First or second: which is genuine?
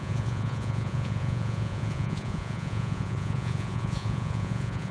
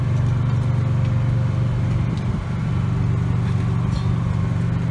second